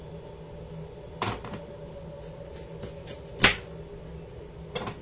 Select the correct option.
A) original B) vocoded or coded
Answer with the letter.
A